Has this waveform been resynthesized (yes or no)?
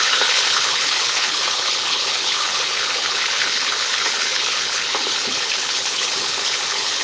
yes